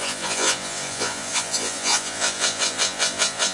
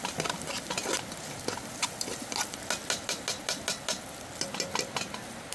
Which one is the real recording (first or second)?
second